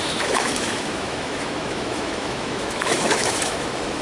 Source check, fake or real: fake